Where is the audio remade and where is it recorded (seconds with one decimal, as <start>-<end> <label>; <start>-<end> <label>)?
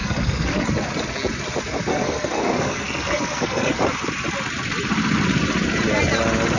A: 0.0-0.7 remade; 0.7-1.9 recorded; 1.9-3.8 remade; 3.8-6.6 recorded